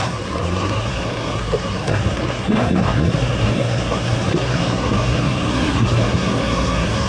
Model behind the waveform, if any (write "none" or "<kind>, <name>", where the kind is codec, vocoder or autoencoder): codec, SNAC